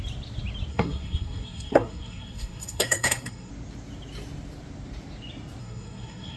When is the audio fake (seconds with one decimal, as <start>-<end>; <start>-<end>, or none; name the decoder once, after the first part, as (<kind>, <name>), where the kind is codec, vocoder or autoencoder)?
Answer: 0.7-3.5 (codec, SNAC); 5.6-6.4